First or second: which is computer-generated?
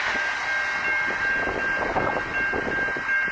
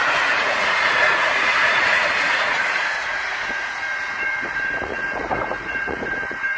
second